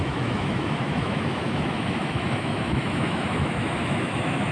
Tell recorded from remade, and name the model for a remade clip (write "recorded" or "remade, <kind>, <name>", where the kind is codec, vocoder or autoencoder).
remade, autoencoder, DAC-VAE